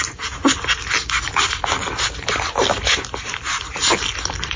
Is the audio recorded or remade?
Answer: recorded